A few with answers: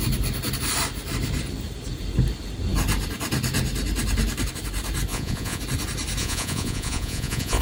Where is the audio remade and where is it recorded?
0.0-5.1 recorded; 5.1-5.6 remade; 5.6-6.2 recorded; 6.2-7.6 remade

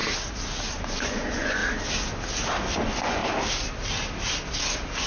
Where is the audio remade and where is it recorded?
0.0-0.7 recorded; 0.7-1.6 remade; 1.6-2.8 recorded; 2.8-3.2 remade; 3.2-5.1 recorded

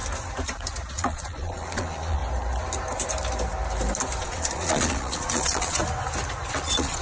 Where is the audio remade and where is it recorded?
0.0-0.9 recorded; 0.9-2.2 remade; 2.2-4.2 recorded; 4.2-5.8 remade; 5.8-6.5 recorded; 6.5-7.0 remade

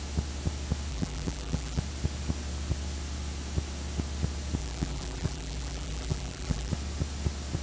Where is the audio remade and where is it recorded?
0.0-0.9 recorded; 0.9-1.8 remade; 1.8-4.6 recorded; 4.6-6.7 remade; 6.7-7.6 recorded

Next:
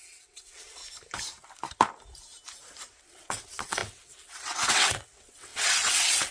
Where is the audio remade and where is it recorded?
0.0-0.8 remade; 0.8-3.0 recorded; 3.0-6.3 remade